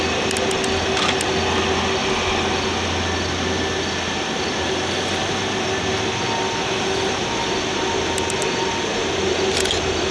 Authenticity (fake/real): real